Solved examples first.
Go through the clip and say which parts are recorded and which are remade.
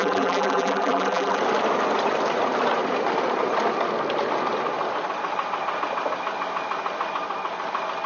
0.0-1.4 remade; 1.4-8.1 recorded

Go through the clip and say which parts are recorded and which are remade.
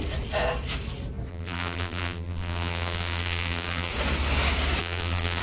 0.0-1.3 recorded; 1.3-3.9 remade; 3.9-4.8 recorded; 4.8-5.4 remade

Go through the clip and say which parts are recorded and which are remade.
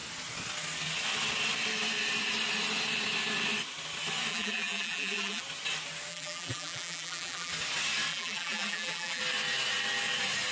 0.0-4.3 recorded; 4.3-5.4 remade; 5.4-6.1 recorded; 6.1-7.5 remade; 7.5-8.1 recorded; 8.1-9.2 remade; 9.2-10.5 recorded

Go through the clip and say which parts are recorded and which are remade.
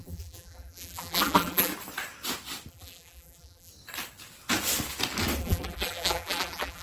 0.0-1.7 remade; 1.7-2.7 recorded; 2.7-3.7 remade; 3.7-5.4 recorded; 5.4-6.8 remade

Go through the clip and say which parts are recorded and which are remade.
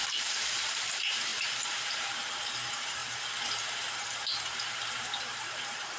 0.0-6.0 remade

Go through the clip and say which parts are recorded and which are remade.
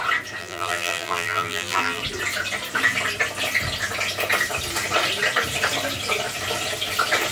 0.0-0.4 recorded; 0.4-2.0 remade; 2.0-7.3 recorded